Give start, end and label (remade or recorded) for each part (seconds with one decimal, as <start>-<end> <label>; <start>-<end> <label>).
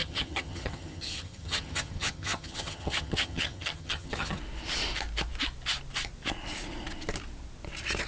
0.0-4.4 remade; 4.4-8.1 recorded